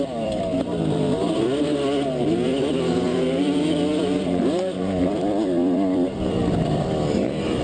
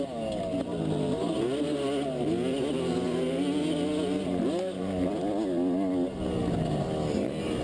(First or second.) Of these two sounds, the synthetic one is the first